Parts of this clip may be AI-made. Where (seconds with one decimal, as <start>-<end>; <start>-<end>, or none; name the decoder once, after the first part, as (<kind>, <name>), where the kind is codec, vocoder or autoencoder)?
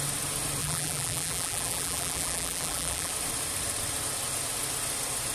0.6-3.1 (vocoder, BigVGAN v2)